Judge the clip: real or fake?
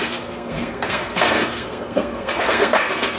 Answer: fake